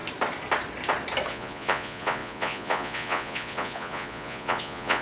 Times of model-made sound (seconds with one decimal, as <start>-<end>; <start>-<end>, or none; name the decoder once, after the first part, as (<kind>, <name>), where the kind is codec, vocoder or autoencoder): 1.3-5.0 (vocoder, Vocos)